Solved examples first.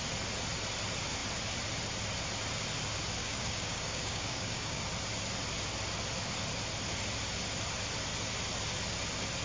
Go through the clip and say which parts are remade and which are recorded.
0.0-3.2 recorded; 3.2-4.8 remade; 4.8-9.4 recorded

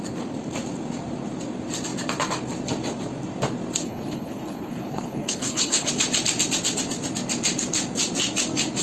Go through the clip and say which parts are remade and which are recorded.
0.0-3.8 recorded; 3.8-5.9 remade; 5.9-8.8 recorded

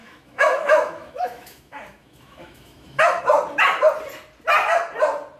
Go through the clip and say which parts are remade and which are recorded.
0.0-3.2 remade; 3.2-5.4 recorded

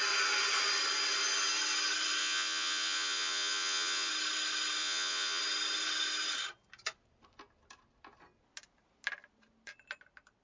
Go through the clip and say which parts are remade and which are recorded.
0.0-2.2 recorded; 2.2-4.1 remade; 4.1-4.8 recorded; 4.8-5.4 remade; 5.4-10.4 recorded